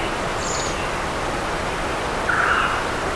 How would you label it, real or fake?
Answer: real